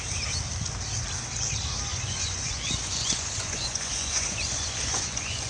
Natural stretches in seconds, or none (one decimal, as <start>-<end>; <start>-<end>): 0.0-1.9